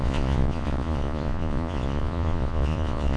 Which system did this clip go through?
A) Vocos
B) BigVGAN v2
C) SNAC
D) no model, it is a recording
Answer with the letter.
A